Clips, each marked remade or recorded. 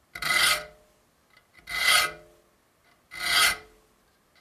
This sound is recorded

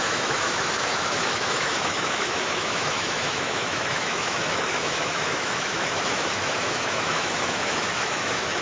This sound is remade